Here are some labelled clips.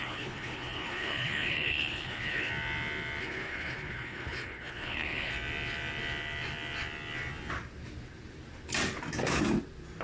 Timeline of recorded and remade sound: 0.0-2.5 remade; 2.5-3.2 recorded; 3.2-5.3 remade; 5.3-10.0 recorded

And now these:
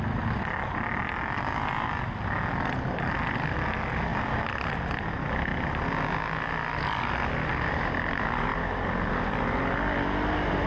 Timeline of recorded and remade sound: 0.0-10.7 recorded